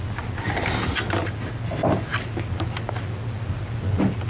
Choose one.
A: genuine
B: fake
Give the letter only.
A